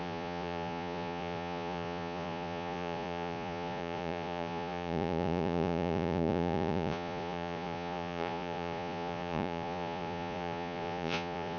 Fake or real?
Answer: fake